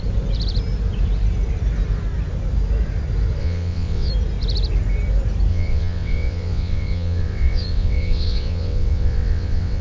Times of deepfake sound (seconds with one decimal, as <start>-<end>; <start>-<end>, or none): 3.4-4.1; 5.5-9.8